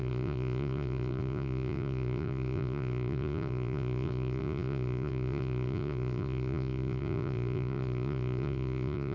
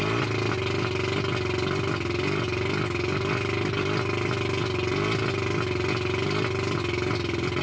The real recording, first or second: second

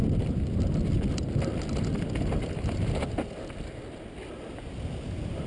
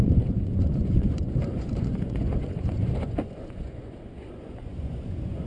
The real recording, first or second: first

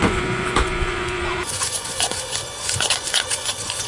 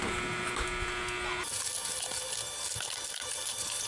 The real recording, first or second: second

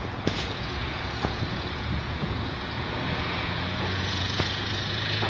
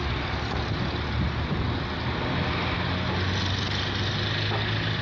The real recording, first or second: second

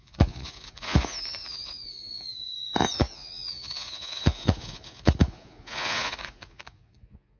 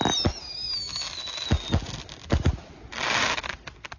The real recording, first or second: second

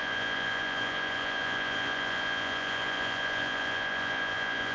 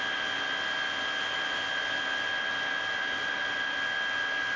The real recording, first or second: second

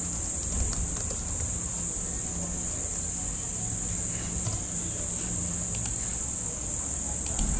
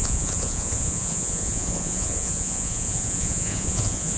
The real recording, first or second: first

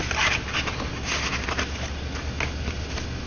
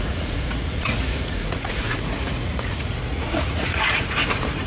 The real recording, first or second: first